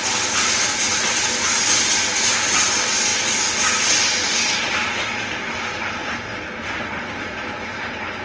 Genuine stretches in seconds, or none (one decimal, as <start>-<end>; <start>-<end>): 0.0-8.2